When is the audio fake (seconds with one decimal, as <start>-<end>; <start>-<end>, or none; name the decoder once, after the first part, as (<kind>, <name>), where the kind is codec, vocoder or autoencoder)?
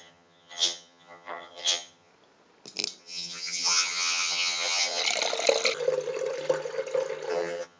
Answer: 0.0-2.1 (vocoder, HiFi-GAN); 3.0-5.0; 7.3-7.8